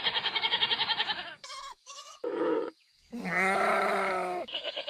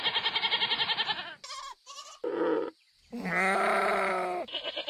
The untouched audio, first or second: second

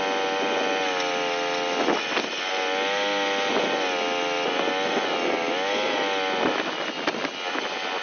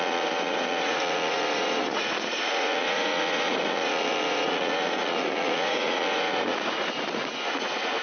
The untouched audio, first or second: first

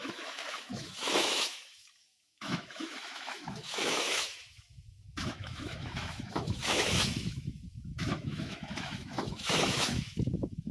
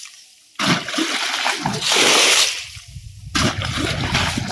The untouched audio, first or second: second